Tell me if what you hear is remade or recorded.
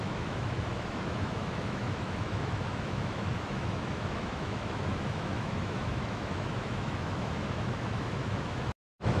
remade